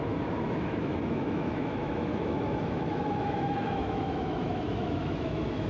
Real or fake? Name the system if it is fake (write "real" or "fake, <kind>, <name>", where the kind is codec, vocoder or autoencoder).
fake, autoencoder, DAC-VAE